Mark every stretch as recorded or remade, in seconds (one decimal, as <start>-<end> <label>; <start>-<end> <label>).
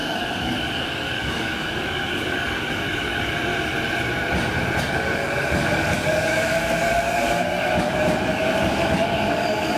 0.0-3.5 remade; 3.5-4.8 recorded; 4.8-9.8 remade